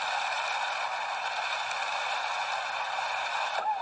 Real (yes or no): yes